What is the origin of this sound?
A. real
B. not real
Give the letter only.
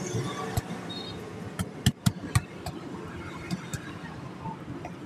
A